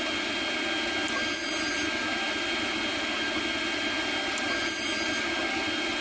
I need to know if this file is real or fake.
real